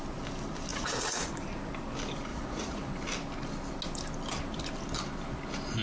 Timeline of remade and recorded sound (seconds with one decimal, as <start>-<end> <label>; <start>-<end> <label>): 0.0-0.7 recorded; 0.7-1.3 remade; 1.3-2.3 recorded; 2.3-2.9 remade; 2.9-5.8 recorded